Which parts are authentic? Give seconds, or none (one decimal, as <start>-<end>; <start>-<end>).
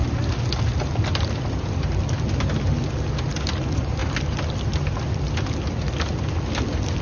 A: 0.0-7.0